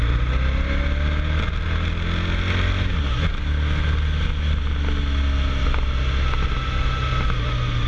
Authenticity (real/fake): real